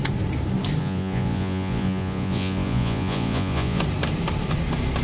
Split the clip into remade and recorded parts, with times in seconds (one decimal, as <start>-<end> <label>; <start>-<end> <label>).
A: 0.0-0.8 recorded; 0.8-3.8 remade; 3.8-5.0 recorded